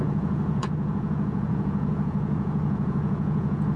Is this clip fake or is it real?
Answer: fake